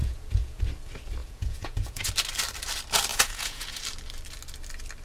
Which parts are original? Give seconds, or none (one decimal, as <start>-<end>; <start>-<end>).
0.6-1.2; 2.1-3.1; 3.8-5.0